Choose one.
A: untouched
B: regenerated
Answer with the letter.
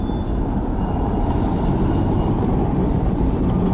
A